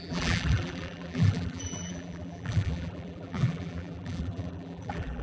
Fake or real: fake